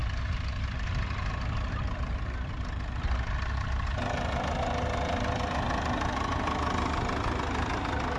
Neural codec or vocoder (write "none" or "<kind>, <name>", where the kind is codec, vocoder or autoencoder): none